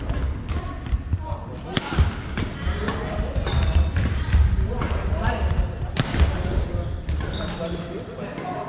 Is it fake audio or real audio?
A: real